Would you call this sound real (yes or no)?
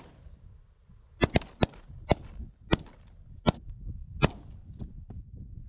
yes